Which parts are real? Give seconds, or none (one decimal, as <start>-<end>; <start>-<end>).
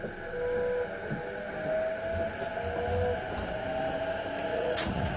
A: 0.0-4.5